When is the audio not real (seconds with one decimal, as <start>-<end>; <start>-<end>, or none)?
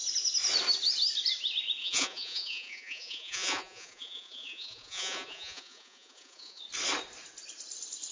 1.8-6.6